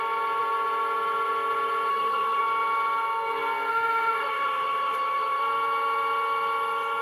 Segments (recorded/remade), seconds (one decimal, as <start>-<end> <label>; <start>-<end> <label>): 0.0-1.9 recorded; 1.9-2.4 remade; 2.4-3.7 recorded; 3.7-5.4 remade; 5.4-7.0 recorded

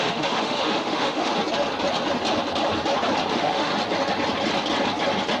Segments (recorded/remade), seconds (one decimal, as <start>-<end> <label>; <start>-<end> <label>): 0.0-1.3 remade; 1.3-3.3 recorded; 3.3-3.7 remade; 3.7-5.4 recorded

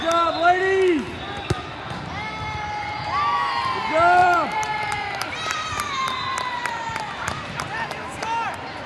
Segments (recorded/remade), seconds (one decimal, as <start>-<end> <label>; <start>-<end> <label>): 0.0-4.2 recorded; 4.2-6.6 remade; 6.6-8.9 recorded

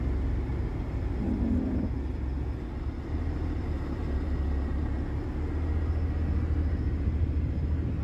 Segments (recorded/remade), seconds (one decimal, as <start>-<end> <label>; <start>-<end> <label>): 0.0-0.7 recorded; 0.7-4.8 remade; 4.8-8.0 recorded

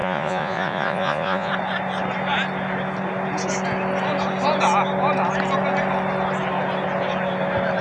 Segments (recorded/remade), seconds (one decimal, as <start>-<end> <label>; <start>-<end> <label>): 0.0-1.5 remade; 1.5-7.8 recorded

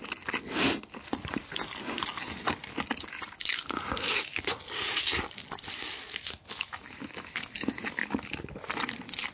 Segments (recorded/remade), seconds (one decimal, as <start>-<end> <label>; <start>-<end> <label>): 0.0-5.8 recorded; 5.8-8.5 remade; 8.5-9.3 recorded

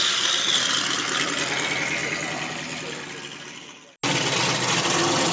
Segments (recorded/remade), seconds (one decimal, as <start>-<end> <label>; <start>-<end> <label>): 0.0-5.3 recorded

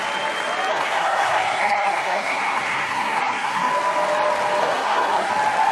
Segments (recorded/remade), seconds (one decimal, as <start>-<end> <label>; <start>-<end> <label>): 0.0-0.7 recorded; 0.7-3.7 remade; 3.7-4.6 recorded; 4.6-5.3 remade; 5.3-5.7 recorded